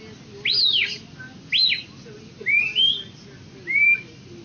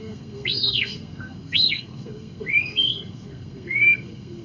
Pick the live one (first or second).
first